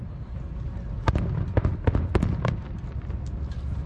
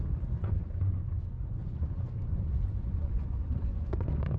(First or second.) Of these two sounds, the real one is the first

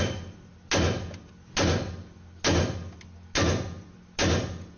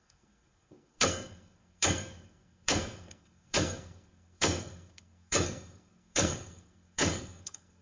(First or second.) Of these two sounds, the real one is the first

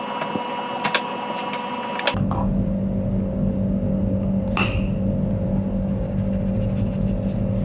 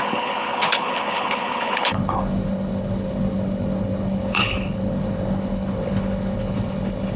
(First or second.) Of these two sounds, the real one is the first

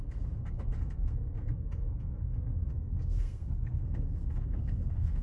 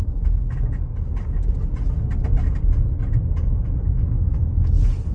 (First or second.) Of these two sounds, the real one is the second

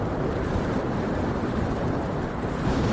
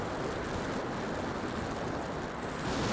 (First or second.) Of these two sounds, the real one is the second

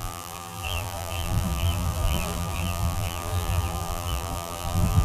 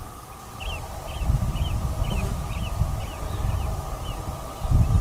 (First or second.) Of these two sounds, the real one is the second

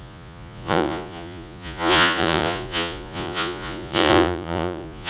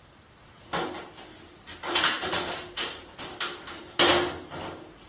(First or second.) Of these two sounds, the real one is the second